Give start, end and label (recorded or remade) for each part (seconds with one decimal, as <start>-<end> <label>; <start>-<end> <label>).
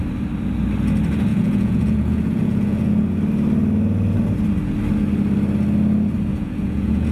0.0-1.3 recorded; 1.3-3.0 remade; 3.0-6.3 recorded; 6.3-7.1 remade